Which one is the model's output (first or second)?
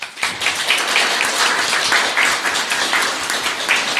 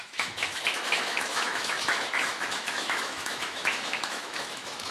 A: second